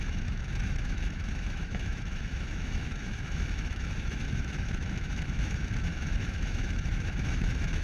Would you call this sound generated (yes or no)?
yes